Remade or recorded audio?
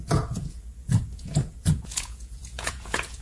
remade